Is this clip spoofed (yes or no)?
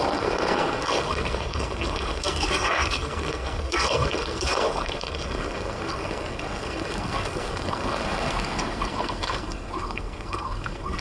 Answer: yes